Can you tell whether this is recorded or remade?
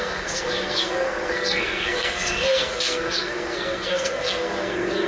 remade